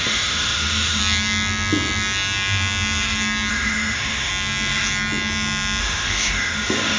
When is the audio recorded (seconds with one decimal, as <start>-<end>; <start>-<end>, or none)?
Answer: 1.0-3.5; 4.3-5.8